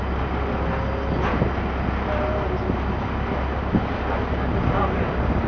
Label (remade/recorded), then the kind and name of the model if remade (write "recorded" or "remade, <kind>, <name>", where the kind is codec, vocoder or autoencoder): recorded